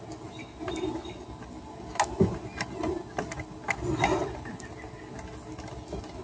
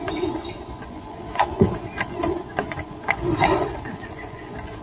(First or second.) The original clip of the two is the first